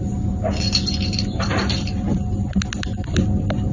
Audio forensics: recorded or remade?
recorded